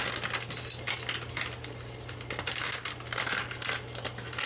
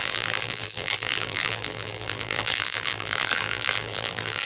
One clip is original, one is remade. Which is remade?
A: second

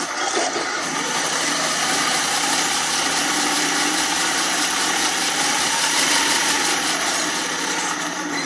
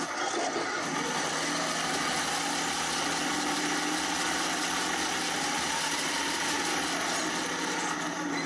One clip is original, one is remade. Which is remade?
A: first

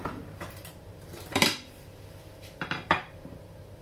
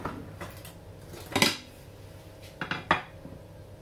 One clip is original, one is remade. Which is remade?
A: first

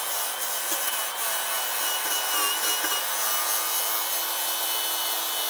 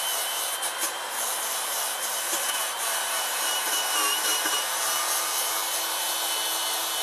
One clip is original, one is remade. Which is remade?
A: second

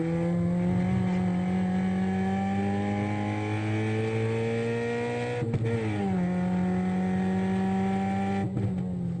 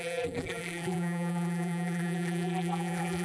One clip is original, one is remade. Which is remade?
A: second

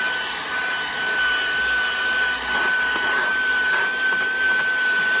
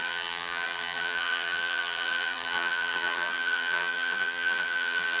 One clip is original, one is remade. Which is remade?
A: second